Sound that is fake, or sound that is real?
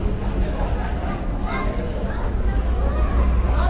fake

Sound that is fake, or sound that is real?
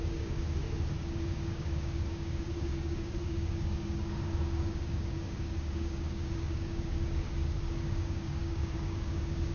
fake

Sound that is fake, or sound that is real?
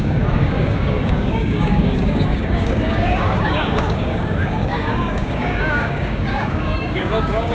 fake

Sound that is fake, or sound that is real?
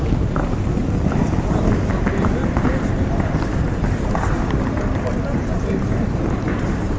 real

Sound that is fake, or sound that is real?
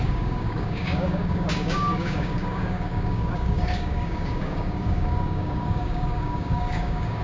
fake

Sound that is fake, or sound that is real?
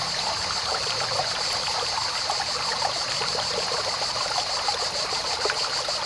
real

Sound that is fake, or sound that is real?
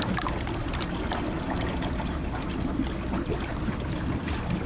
real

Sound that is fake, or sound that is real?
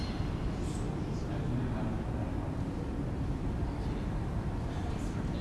real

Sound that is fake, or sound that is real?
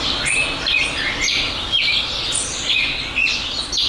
real